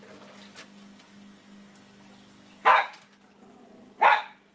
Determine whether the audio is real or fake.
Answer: real